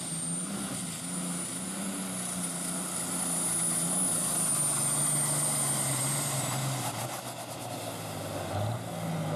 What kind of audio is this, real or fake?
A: real